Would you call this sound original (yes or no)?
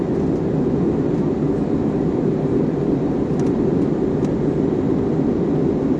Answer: yes